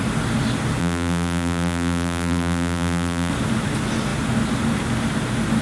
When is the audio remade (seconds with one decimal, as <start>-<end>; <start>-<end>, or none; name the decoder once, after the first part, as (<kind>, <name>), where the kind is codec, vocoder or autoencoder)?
0.8-3.3 (vocoder, BigVGAN v2)